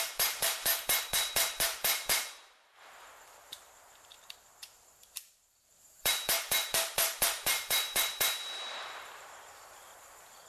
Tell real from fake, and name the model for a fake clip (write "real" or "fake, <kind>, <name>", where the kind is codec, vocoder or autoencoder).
fake, vocoder, BigVGAN v2